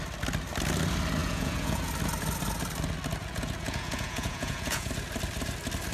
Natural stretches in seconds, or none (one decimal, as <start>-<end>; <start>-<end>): 0.0-1.2; 1.9-3.2; 4.9-5.9